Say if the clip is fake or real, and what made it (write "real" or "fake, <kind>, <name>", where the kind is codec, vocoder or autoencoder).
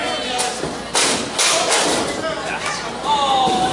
real